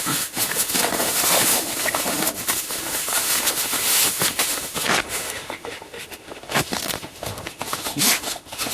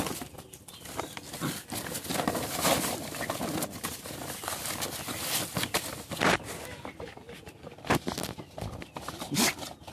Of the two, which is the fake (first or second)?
first